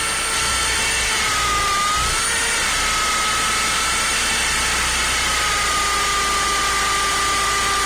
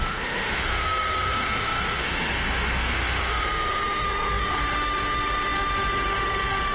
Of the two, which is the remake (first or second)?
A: second